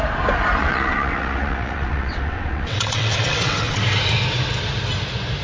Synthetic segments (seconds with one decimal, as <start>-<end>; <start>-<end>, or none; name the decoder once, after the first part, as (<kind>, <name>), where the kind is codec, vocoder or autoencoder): 0.6-3.8 (vocoder, WaveNeXt)